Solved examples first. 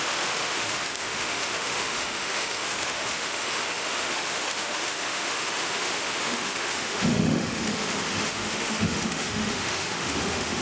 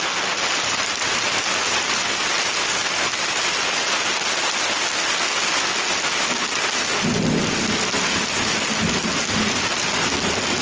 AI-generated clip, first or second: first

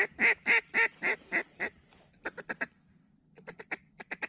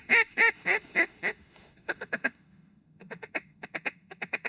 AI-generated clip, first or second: second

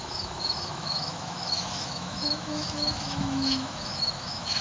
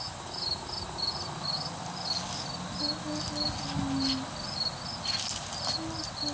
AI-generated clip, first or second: first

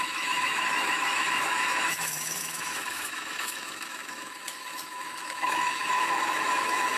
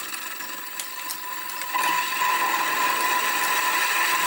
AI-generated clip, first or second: first